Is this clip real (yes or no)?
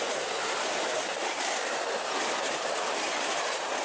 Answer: yes